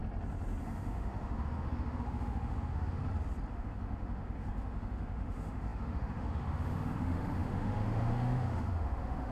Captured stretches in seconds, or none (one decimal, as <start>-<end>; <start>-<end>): 0.0-0.6; 3.0-3.5